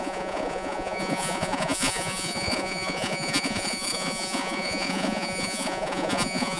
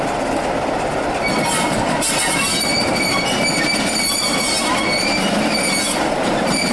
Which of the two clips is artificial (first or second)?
first